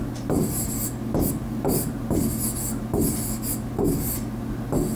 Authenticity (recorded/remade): recorded